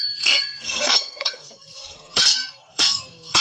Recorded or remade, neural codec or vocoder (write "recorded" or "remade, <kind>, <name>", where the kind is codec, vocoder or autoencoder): remade, codec, SNAC